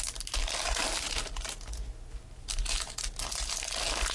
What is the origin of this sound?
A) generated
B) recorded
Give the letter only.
B